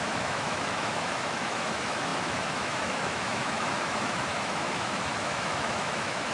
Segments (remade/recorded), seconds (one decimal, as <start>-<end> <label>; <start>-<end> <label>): 0.0-6.3 remade